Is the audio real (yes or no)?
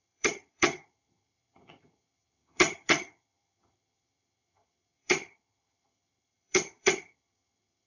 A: no